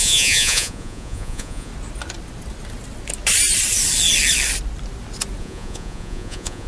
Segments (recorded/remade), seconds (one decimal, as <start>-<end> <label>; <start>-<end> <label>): 0.0-1.7 remade; 1.7-5.4 recorded; 5.4-6.7 remade